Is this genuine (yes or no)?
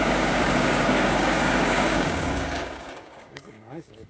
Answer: no